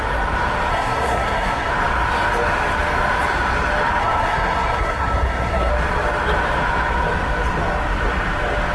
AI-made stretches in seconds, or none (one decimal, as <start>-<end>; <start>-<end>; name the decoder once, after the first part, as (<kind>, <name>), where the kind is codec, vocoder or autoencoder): 0.7-1.7 (codec, SNAC); 4.0-5.7